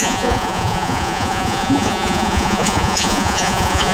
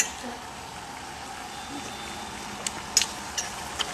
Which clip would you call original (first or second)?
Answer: second